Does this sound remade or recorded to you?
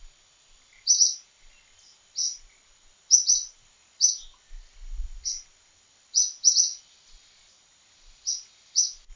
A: recorded